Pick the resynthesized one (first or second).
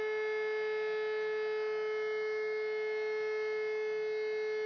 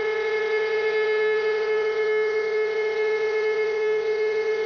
second